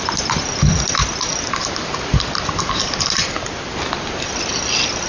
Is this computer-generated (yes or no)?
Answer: no